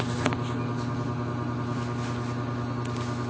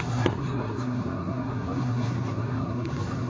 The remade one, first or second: second